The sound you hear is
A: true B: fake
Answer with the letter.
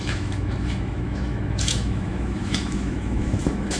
B